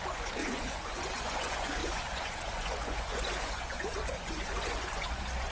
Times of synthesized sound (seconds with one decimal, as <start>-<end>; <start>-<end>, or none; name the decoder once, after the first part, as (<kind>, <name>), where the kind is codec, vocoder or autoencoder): 0.0-5.5 (vocoder, Vocos)